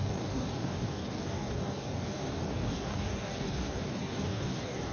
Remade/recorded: remade